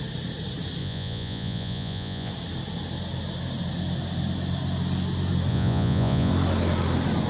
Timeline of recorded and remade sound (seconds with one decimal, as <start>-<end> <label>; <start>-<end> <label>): 0.0-0.8 recorded; 0.8-2.3 remade; 2.3-5.5 recorded; 5.5-6.3 remade; 6.3-7.3 recorded